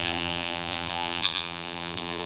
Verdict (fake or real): fake